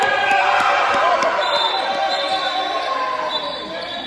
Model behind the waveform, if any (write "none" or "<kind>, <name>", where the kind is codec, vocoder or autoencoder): vocoder, BigVGAN v2